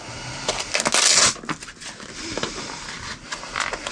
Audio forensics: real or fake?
real